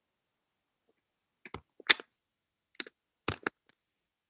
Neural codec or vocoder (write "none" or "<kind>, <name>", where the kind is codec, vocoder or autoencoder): none